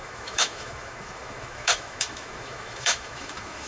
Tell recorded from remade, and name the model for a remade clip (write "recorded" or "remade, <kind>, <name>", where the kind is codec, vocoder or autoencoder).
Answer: remade, autoencoder, DAC-VAE